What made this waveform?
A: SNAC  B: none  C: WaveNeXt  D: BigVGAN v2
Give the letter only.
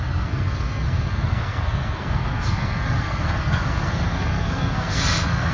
A